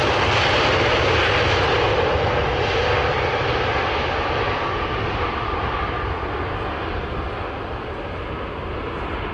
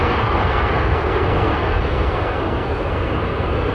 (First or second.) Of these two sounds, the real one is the first